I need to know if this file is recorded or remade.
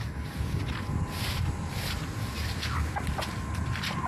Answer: recorded